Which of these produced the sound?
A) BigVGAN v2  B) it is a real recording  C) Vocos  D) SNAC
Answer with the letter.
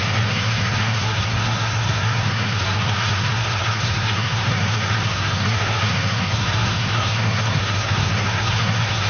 D